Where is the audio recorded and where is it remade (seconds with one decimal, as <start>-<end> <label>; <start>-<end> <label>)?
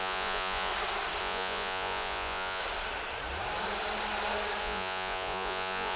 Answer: 0.0-0.7 remade; 0.7-1.2 recorded; 1.2-2.6 remade; 2.6-4.6 recorded; 4.6-6.0 remade